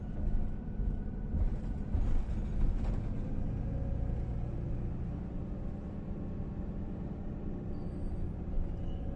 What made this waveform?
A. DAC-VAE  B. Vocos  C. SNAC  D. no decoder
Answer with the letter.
D